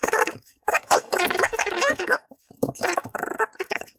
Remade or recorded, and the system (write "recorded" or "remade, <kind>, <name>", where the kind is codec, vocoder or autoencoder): remade, codec, SNAC